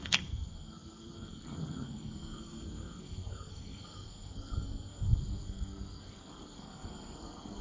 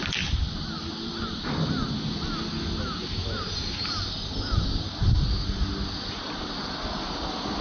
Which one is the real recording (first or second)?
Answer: second